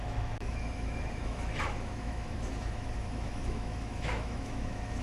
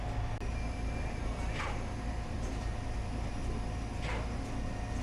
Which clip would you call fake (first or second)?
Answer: first